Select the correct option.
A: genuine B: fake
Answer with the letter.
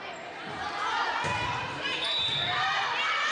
A